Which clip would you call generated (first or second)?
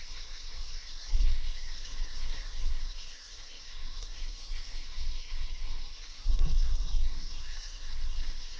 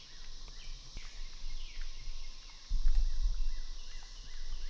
first